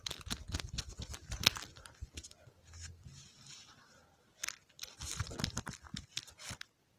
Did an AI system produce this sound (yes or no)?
no